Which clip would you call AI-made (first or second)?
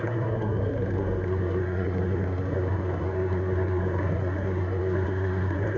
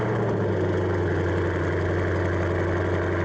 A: first